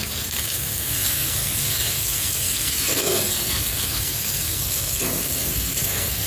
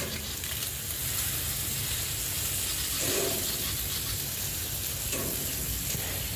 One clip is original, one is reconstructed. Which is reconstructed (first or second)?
first